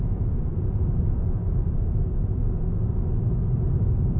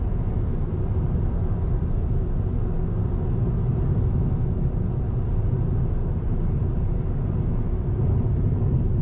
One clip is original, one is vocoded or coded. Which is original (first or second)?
second